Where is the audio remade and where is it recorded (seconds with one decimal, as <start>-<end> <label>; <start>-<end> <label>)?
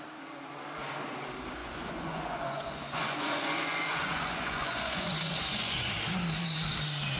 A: 0.0-1.6 recorded; 1.6-5.9 remade; 5.9-7.2 recorded